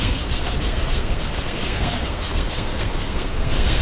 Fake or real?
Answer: fake